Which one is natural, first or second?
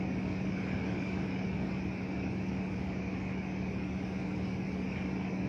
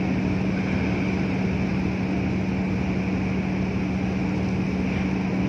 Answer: second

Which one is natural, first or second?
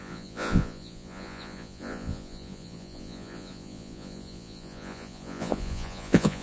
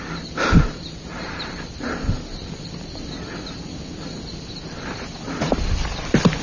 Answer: second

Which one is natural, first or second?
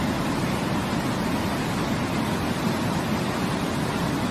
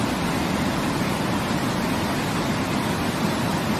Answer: first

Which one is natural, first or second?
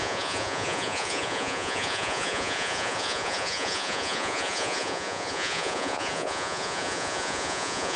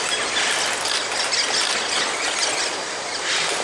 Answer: second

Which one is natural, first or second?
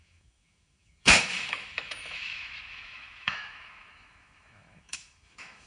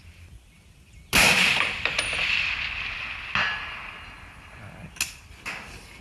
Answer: second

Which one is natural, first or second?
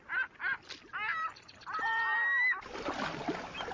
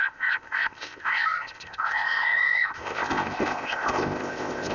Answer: first